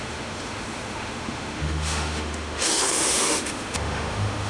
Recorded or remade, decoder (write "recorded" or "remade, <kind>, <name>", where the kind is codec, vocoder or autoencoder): remade, autoencoder, DAC-VAE